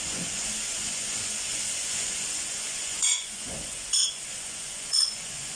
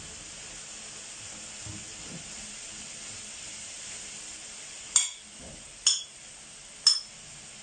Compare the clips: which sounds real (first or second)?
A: second